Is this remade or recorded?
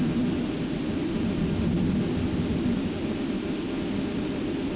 recorded